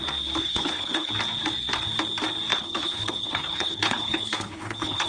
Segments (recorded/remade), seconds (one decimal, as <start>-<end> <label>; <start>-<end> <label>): 0.0-0.4 recorded; 0.4-1.1 remade; 1.1-2.5 recorded; 2.5-5.1 remade